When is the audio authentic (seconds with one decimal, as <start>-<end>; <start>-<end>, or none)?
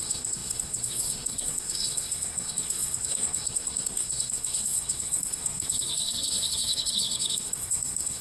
none